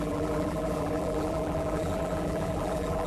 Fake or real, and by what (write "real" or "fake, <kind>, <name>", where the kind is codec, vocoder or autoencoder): fake, vocoder, BigVGAN v2